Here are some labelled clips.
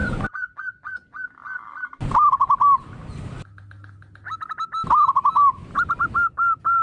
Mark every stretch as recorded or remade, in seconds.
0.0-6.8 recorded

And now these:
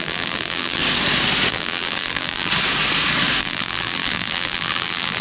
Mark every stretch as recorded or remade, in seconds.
0.0-0.8 remade; 0.8-1.5 recorded; 1.5-2.5 remade; 2.5-3.4 recorded; 3.4-5.2 remade

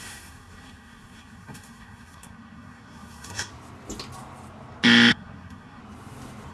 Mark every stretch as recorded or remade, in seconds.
0.0-3.5 remade; 3.5-5.1 recorded; 5.1-5.8 remade; 5.8-6.5 recorded

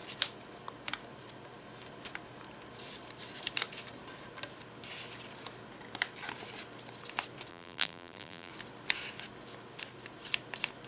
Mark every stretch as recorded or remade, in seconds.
0.0-7.5 recorded; 7.5-8.5 remade; 8.5-10.9 recorded

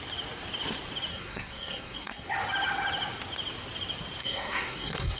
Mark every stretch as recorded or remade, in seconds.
0.0-1.1 recorded; 1.1-2.3 remade; 2.3-4.2 recorded; 4.2-5.2 remade

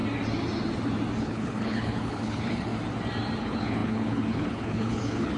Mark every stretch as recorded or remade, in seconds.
0.0-1.2 recorded; 1.2-2.7 remade; 2.7-3.4 recorded; 3.4-5.4 remade

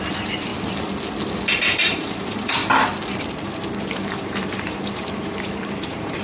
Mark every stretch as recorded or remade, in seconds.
0.0-0.5 remade; 0.5-1.5 recorded; 1.5-2.6 remade; 2.6-3.8 recorded; 3.8-6.2 remade